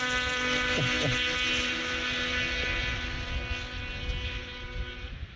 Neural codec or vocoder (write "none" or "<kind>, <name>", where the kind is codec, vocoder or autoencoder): none